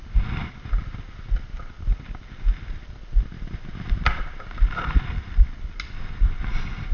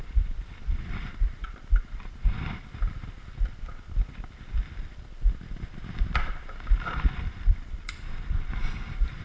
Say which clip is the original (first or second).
first